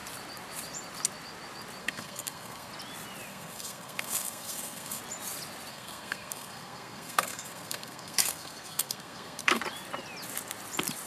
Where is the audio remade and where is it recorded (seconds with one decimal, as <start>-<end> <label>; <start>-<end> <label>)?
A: 0.0-1.8 recorded; 1.8-2.7 remade; 2.7-3.3 recorded; 3.3-5.0 remade; 5.0-5.7 recorded; 5.7-9.6 remade; 9.6-11.1 recorded